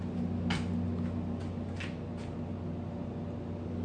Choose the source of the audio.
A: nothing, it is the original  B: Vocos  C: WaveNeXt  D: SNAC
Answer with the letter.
A